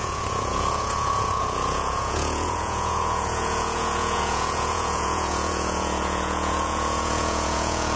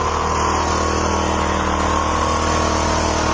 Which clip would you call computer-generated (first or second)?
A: first